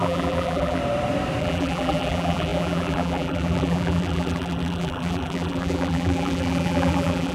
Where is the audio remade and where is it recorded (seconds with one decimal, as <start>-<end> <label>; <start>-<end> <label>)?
0.0-0.8 remade; 0.8-1.4 recorded; 1.4-7.3 remade